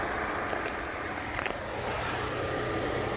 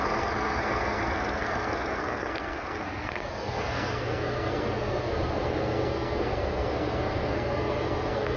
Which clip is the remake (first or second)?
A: second